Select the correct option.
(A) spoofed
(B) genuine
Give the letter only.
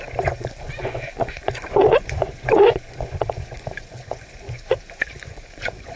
A